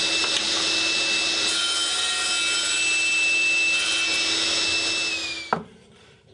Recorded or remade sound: recorded